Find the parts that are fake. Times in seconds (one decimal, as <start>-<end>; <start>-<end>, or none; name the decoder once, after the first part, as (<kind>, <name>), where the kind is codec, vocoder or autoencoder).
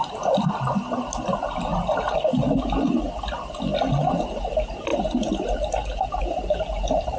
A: none